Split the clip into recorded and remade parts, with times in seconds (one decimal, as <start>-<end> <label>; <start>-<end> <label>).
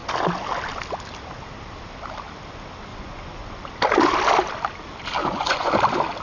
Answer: 0.0-2.9 recorded; 2.9-3.6 remade; 3.6-5.2 recorded; 5.2-5.7 remade; 5.7-6.2 recorded